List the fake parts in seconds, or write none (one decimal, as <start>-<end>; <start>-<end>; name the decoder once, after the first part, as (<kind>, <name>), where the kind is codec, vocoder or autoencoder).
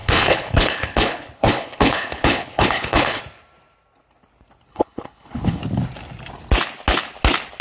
0.0-3.2 (codec, HILCodec); 4.7-5.6